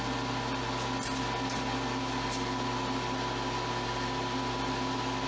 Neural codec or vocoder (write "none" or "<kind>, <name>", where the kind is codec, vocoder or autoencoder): none